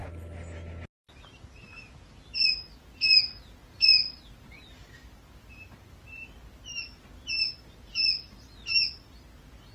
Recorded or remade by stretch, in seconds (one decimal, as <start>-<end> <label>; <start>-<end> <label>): 0.0-9.7 recorded